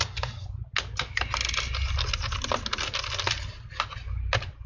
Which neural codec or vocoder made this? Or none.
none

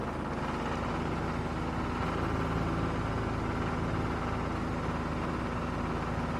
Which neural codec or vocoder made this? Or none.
none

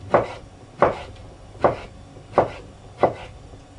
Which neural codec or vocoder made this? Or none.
none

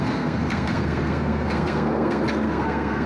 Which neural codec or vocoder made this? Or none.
codec, SNAC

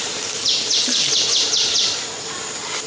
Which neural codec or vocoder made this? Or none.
none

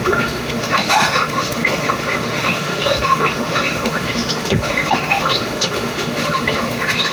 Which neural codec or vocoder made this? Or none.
autoencoder, DAC-VAE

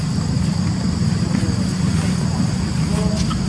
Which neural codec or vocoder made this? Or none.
none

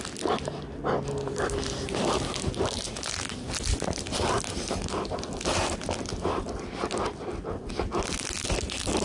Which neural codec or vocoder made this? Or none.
none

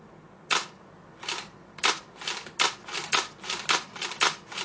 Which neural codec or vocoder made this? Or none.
none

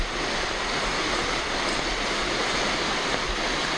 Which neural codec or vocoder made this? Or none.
none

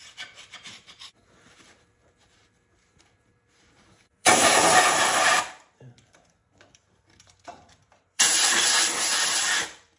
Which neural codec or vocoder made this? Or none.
vocoder, BigVGAN v2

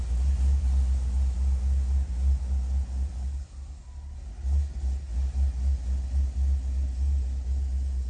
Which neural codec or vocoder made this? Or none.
none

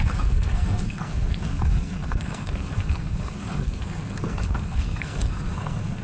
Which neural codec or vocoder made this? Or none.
codec, SNAC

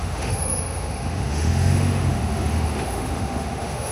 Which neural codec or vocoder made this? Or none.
autoencoder, DAC-VAE